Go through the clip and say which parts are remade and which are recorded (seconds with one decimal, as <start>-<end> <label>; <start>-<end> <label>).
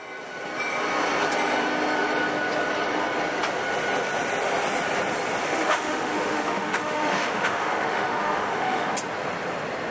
0.0-5.4 recorded; 5.4-8.9 remade; 8.9-9.9 recorded